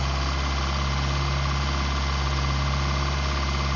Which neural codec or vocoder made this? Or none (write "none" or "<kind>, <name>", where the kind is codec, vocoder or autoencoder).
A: none